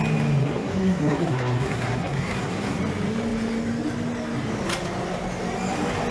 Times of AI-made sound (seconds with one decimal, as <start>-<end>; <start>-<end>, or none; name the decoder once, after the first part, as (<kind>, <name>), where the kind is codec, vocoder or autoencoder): 0.4-2.8 (codec, SNAC)